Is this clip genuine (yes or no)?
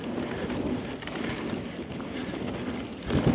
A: yes